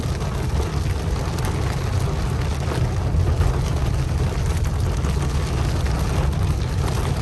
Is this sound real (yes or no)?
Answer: yes